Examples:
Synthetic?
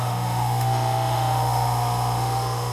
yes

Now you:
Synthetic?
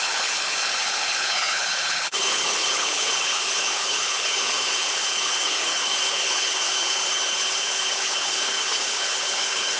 yes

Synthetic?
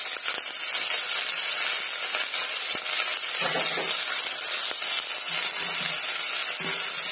no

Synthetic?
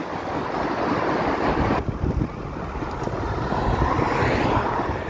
no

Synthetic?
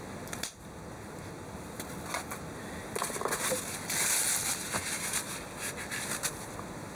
no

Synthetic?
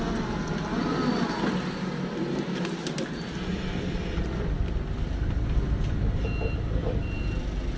no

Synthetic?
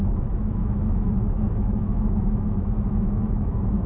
yes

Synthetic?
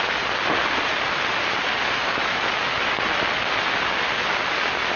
no